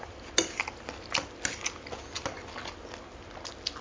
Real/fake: real